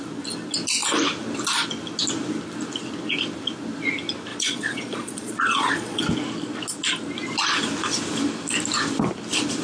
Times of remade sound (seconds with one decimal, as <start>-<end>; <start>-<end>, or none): 4.3-6.0